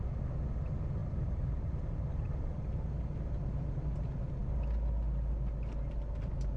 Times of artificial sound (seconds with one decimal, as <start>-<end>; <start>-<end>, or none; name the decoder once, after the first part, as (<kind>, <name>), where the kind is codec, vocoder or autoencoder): 1.0-2.6 (vocoder, BigVGAN v2)